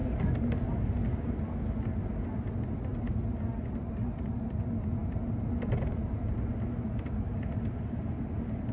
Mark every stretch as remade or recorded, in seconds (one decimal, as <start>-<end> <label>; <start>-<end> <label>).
0.0-8.7 recorded